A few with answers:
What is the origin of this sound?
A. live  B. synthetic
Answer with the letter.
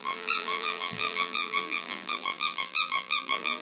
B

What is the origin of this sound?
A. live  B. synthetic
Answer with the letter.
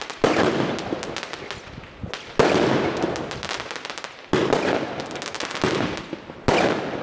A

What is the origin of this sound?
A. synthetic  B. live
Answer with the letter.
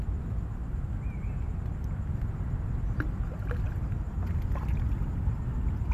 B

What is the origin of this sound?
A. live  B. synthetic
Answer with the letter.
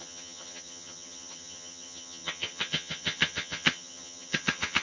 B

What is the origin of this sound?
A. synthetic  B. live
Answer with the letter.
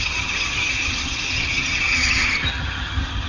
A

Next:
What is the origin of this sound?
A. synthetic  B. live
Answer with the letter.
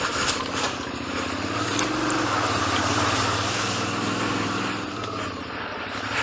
B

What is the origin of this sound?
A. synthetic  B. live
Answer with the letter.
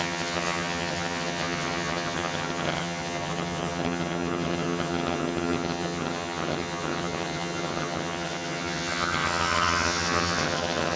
A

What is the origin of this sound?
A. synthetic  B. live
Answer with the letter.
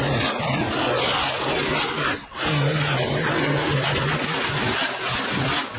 B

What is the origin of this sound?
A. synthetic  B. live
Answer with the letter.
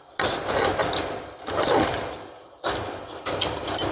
B